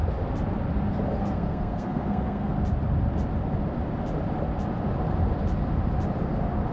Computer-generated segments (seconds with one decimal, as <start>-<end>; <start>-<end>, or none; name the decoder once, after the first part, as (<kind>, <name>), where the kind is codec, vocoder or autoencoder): 1.2-2.5 (codec, SNAC)